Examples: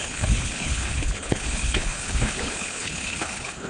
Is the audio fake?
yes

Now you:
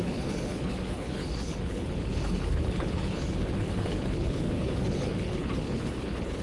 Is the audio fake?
yes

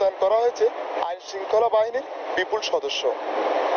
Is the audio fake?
no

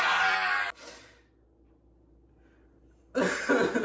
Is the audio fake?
no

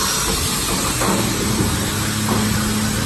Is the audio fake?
no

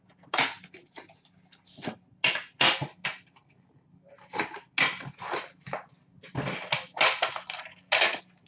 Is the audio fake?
no